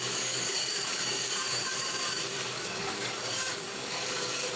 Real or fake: fake